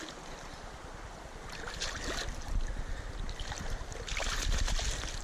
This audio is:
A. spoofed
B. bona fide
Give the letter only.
B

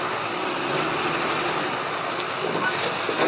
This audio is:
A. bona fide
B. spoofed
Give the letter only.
A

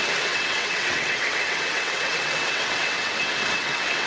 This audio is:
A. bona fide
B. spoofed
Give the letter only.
B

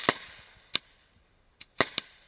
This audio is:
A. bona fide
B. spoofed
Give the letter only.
A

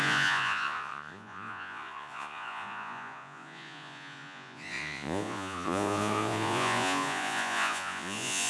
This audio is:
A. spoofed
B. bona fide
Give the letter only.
A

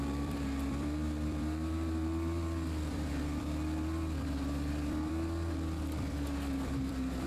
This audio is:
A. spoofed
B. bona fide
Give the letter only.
A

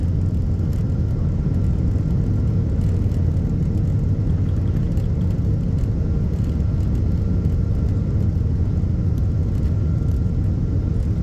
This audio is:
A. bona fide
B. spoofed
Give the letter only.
A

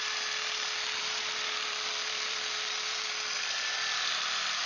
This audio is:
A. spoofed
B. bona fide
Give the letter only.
A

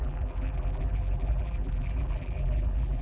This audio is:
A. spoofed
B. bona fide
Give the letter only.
A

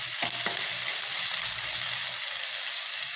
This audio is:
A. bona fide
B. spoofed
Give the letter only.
A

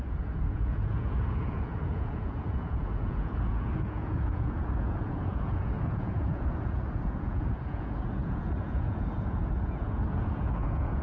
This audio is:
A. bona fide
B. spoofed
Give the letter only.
B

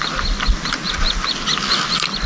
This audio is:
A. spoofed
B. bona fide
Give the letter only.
B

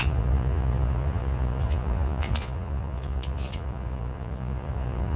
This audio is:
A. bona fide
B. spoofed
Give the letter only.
B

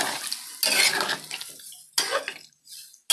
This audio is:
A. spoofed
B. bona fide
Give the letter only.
B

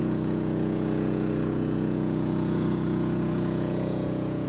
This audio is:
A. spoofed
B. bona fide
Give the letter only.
A